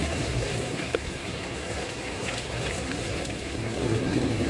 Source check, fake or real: fake